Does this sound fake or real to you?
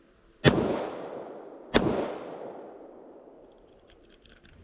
real